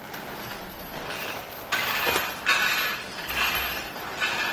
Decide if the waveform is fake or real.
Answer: real